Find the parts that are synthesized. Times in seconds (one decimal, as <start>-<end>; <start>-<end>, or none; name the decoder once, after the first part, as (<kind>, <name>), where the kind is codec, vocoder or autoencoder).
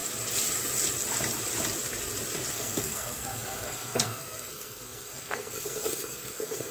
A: 2.5-6.7 (codec, SNAC)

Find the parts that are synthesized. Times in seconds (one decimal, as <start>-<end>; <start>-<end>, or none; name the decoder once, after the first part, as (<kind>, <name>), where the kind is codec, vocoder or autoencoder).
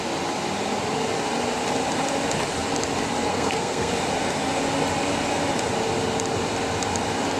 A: 3.3-3.9 (codec, SNAC)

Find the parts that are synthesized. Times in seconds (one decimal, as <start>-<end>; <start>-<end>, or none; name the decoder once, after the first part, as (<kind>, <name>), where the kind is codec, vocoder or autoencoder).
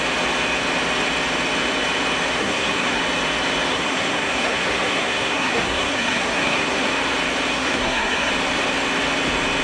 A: 2.4-3.0 (codec, SNAC); 3.7-6.9; 7.5-8.3